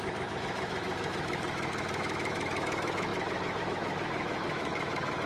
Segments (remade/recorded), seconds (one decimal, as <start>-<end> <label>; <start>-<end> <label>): 0.0-5.3 remade